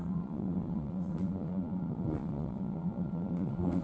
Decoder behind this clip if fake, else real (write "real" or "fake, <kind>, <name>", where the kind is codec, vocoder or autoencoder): fake, vocoder, Vocos